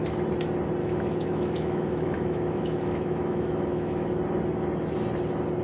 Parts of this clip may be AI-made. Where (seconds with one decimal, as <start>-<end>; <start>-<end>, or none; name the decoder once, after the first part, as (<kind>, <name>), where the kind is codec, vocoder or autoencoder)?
0.8-4.2 (autoencoder, DAC-VAE)